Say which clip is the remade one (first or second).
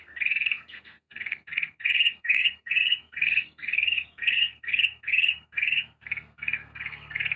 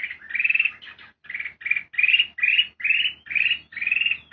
first